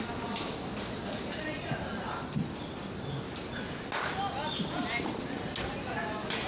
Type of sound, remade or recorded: recorded